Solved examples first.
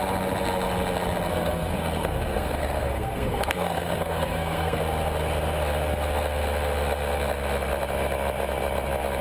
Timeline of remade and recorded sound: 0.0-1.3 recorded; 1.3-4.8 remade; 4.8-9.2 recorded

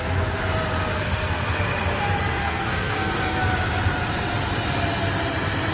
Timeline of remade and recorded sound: 0.0-0.9 recorded; 0.9-1.6 remade; 1.6-2.4 recorded; 2.4-3.4 remade; 3.4-5.7 recorded

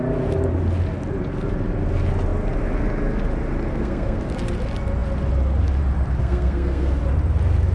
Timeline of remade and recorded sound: 0.0-3.7 recorded; 3.7-4.2 remade; 4.2-6.2 recorded; 6.2-7.0 remade; 7.0-7.7 recorded

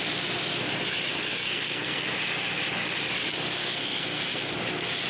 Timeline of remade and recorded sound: 0.0-1.1 recorded; 1.1-2.1 remade; 2.1-3.6 recorded; 3.6-4.5 remade; 4.5-5.1 recorded

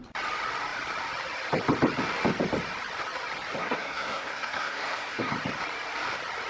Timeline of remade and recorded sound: 0.0-3.6 recorded; 3.6-5.3 remade; 5.3-6.5 recorded